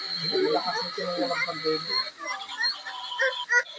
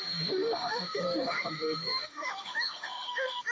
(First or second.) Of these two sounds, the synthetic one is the second